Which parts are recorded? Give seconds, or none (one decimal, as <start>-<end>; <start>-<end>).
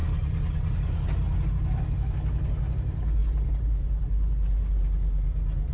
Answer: 0.0-5.7